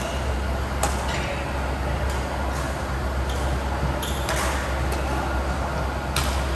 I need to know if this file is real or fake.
real